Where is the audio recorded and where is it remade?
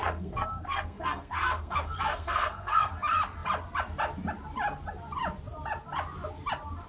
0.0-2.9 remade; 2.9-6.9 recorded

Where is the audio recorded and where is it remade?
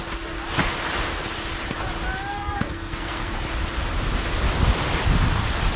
0.0-2.3 recorded; 2.3-3.4 remade; 3.4-5.8 recorded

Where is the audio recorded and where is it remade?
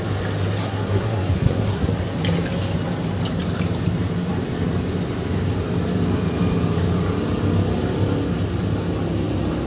0.0-0.6 recorded; 0.6-1.9 remade; 1.9-9.7 recorded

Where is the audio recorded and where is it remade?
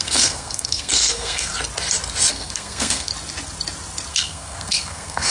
0.0-1.5 remade; 1.5-2.3 recorded; 2.3-3.1 remade; 3.1-4.1 recorded; 4.1-5.3 remade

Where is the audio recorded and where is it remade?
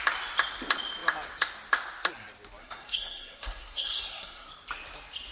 0.0-2.6 recorded; 2.6-4.5 remade; 4.5-5.3 recorded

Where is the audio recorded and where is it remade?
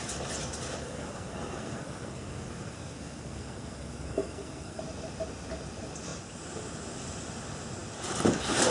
0.0-0.8 recorded; 0.8-4.8 remade; 4.8-8.7 recorded